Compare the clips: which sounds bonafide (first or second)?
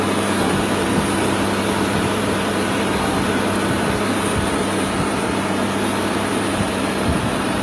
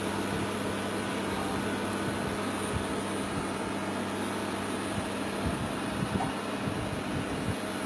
second